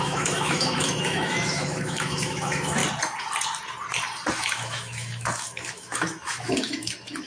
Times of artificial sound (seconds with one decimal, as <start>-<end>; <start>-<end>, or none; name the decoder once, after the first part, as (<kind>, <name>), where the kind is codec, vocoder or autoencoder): 0.0-2.8 (autoencoder, DAC-VAE); 4.3-7.3